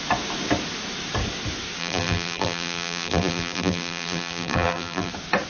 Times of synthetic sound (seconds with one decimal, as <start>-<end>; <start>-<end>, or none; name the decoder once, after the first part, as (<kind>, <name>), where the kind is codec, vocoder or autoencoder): 1.8-5.1 (vocoder, BigVGAN v2)